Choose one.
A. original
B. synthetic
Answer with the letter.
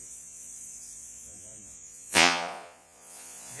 B